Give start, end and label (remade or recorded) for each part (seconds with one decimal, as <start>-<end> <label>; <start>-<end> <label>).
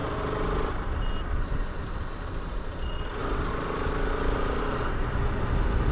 0.0-5.9 recorded